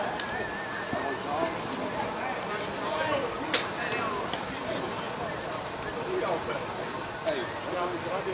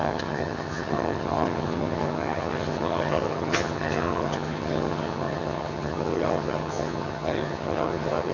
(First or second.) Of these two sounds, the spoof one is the second